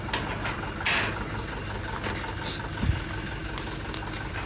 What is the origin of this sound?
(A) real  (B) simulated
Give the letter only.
A